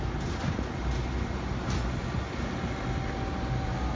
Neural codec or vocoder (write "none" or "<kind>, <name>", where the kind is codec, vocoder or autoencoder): none